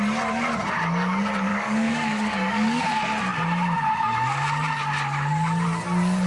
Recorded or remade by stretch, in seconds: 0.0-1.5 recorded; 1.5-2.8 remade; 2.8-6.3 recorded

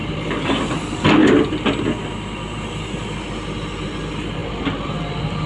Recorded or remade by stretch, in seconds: 0.0-0.6 remade; 0.6-1.2 recorded; 1.2-2.0 remade; 2.0-4.4 recorded; 4.4-4.9 remade; 4.9-5.5 recorded

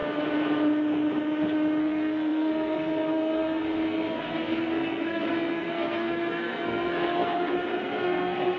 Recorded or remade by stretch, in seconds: 0.0-1.8 recorded; 1.8-8.6 remade

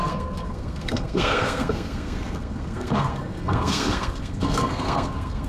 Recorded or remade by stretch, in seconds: 0.0-5.5 remade

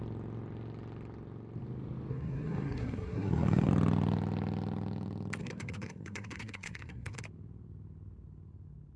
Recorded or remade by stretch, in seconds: 0.0-2.1 recorded; 2.1-3.7 remade; 3.7-5.4 recorded; 5.4-7.2 remade; 7.2-9.0 recorded

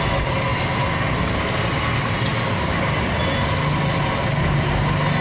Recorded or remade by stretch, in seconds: 0.0-5.2 recorded

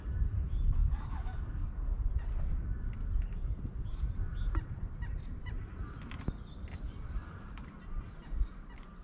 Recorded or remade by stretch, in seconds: 0.0-0.8 recorded; 0.8-2.1 remade; 2.1-9.0 recorded